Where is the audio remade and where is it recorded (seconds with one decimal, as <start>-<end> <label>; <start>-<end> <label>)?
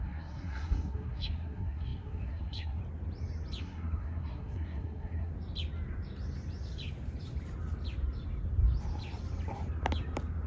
0.0-2.8 remade; 2.8-3.6 recorded; 3.6-5.3 remade; 5.3-10.5 recorded